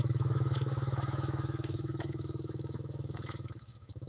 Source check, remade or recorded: remade